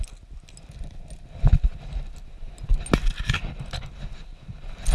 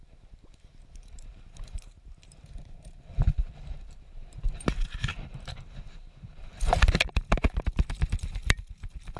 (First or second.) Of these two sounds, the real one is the first